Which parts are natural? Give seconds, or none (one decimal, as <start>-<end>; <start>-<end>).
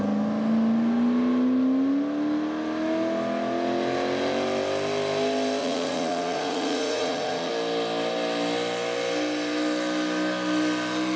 0.0-5.6; 7.5-11.2